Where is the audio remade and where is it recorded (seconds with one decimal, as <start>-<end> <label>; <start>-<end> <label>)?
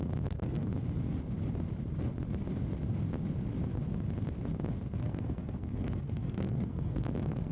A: 0.0-0.7 remade; 0.7-5.0 recorded; 5.0-7.5 remade